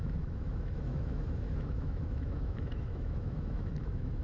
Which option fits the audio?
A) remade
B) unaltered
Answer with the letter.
A